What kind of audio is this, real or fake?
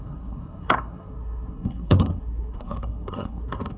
fake